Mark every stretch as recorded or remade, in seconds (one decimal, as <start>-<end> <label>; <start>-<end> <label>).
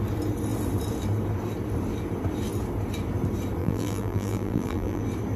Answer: 0.0-3.6 recorded; 3.6-5.0 remade; 5.0-5.4 recorded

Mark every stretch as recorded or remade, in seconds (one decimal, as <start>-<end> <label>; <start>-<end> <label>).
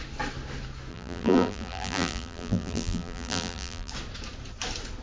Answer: 0.0-0.9 recorded; 0.9-3.9 remade; 3.9-5.0 recorded